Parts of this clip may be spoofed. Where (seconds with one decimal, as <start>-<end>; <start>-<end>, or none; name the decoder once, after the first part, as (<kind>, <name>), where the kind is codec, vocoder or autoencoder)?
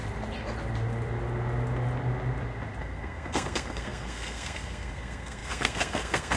2.8-6.4 (codec, SNAC)